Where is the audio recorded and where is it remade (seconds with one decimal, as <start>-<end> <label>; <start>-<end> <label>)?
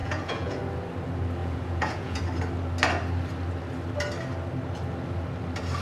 0.0-0.6 remade; 0.6-1.4 recorded; 1.4-2.2 remade; 2.2-5.8 recorded